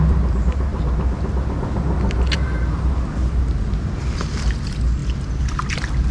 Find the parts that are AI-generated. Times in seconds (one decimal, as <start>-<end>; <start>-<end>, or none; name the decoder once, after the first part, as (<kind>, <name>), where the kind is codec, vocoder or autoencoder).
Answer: none